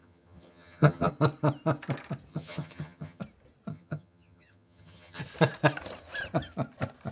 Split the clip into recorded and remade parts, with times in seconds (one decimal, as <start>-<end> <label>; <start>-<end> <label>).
0.0-1.1 remade; 1.1-2.3 recorded; 2.3-3.2 remade; 3.2-3.7 recorded; 3.7-5.2 remade; 5.2-7.1 recorded